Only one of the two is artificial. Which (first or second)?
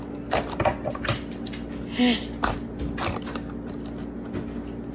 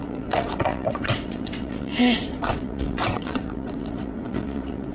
second